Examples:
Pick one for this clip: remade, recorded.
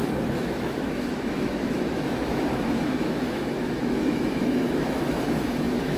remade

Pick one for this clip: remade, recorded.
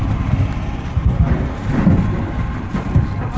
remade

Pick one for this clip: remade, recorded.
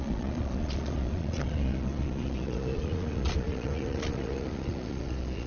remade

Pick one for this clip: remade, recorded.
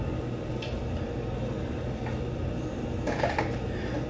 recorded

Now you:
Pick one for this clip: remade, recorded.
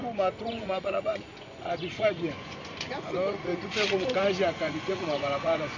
remade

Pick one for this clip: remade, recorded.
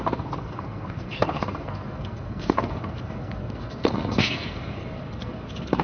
remade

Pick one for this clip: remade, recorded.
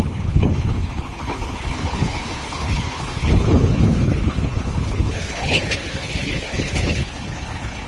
remade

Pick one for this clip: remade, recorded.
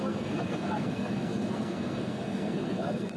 remade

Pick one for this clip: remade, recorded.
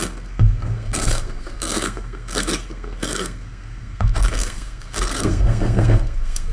remade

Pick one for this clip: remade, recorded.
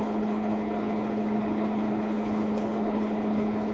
remade